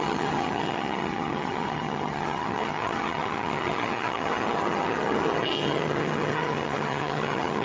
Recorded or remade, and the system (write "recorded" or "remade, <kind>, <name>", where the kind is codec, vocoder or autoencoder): remade, vocoder, HiFi-GAN